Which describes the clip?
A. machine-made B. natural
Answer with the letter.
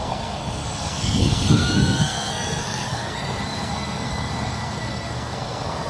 A